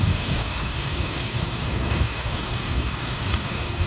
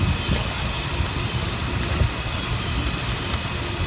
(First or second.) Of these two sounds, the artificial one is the first